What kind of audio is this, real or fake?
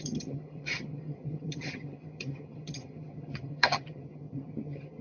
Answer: fake